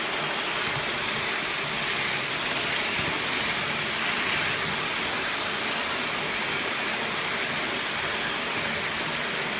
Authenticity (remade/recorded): recorded